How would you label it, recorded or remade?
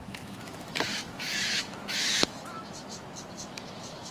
remade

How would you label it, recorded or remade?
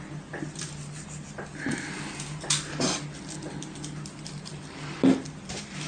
recorded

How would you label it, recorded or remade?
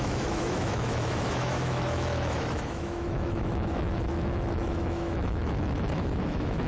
remade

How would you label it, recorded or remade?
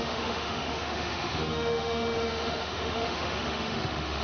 remade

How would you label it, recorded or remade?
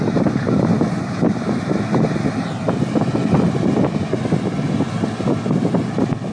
recorded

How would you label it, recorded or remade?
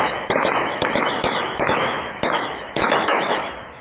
remade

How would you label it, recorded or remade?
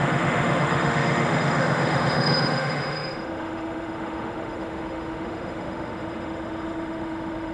remade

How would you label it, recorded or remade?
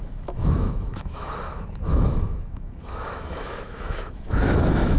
remade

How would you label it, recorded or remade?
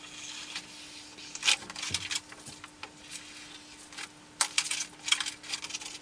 recorded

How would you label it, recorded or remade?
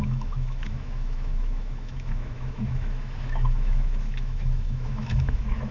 remade